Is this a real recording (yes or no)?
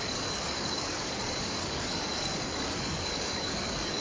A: no